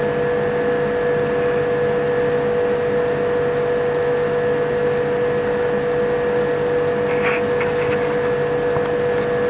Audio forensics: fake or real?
real